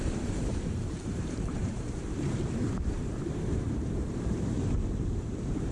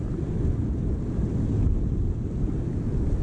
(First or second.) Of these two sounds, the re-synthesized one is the first